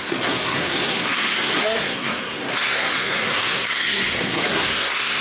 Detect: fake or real fake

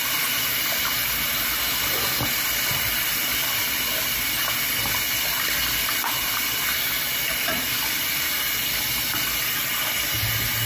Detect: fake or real real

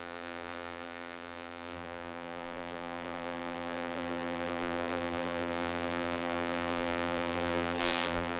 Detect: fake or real fake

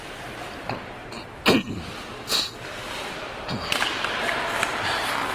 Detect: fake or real fake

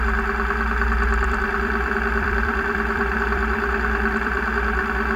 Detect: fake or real fake